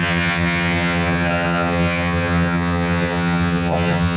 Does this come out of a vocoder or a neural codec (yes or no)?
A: yes